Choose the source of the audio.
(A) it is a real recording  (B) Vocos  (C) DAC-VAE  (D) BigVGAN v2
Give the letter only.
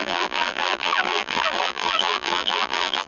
D